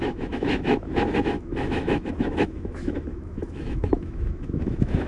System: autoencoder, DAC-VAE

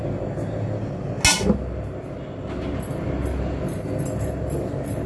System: none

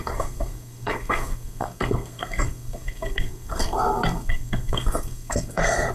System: codec, SNAC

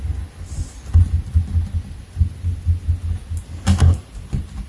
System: none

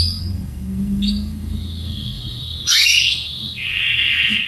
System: codec, SNAC